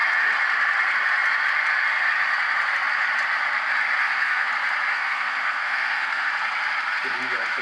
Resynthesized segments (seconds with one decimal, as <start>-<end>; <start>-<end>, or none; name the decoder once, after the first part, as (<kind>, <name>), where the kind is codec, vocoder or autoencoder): 4.0-4.5 (codec, SNAC); 4.9-6.3

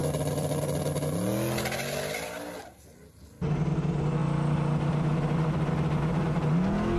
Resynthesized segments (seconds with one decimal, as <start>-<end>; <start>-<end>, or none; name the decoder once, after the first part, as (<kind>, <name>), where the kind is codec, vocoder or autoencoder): none

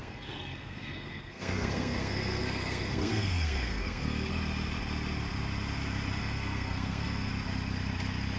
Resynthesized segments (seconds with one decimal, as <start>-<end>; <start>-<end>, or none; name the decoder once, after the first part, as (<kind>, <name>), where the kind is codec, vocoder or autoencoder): 0.0-4.3 (codec, SNAC); 6.2-7.3

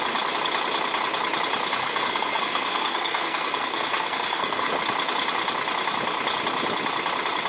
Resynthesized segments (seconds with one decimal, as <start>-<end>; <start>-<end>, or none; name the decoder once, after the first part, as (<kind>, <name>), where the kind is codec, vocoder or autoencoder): 1.8-4.7 (codec, SNAC)

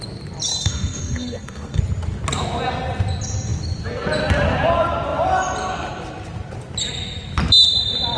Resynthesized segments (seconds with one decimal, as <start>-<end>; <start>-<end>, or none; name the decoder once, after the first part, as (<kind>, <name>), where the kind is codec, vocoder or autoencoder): 0.5-1.8 (codec, SNAC)

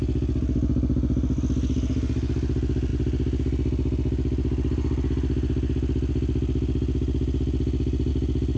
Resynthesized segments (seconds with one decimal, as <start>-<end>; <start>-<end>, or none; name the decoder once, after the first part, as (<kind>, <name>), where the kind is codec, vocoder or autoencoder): none